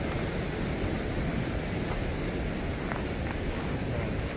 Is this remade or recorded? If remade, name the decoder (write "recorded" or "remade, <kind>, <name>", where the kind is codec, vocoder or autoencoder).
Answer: recorded